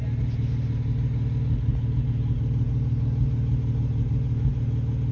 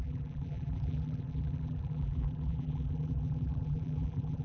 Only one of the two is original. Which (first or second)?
first